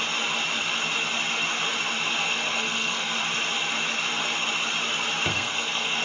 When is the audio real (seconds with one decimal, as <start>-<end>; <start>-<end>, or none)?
0.0-2.2; 3.2-5.3